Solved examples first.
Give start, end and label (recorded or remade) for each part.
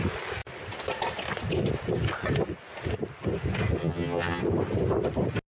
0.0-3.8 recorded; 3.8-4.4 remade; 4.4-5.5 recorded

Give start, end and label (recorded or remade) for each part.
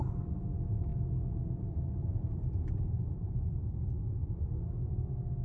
0.0-0.9 recorded; 0.9-4.1 remade; 4.1-5.4 recorded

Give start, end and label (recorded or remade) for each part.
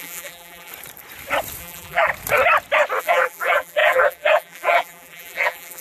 0.0-0.7 remade; 0.7-1.6 recorded; 1.6-2.1 remade; 2.1-3.0 recorded; 3.0-5.8 remade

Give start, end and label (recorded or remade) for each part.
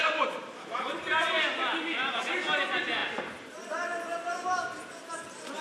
0.0-1.7 remade; 1.7-5.6 recorded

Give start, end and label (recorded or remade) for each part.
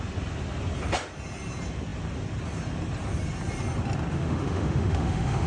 0.0-4.1 recorded; 4.1-5.5 remade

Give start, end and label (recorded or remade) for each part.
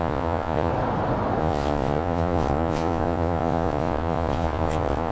0.0-0.7 remade; 0.7-1.4 recorded; 1.4-5.1 remade